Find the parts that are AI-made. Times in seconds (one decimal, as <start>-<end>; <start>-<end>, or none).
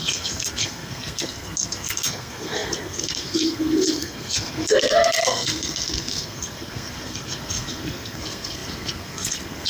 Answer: 0.0-9.7